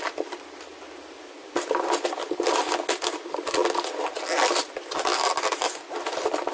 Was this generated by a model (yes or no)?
no